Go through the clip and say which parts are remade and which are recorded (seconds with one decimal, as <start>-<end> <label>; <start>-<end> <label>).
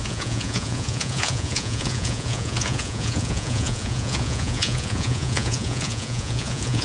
0.0-6.8 remade